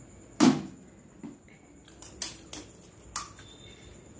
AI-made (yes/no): no